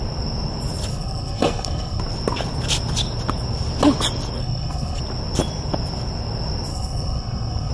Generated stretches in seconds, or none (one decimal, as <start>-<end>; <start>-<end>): 0.9-2.0; 4.4-5.0; 6.7-7.7